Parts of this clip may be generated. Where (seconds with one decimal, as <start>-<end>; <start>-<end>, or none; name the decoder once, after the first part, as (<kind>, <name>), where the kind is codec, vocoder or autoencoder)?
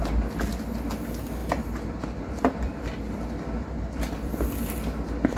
1.4-4.3 (vocoder, BigVGAN v2)